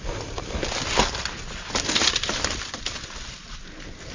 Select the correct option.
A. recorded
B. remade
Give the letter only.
A